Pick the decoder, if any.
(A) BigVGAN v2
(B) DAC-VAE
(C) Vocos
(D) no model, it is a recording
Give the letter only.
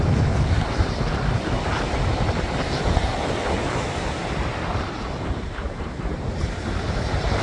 A